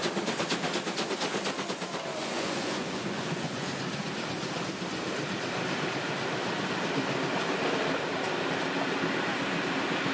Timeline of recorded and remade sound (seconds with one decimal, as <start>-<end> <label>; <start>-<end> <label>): 0.0-2.2 recorded; 2.2-3.7 remade; 3.7-10.1 recorded